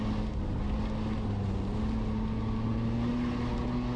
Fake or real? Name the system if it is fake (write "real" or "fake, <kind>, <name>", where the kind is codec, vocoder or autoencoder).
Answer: real